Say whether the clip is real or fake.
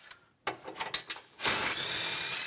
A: real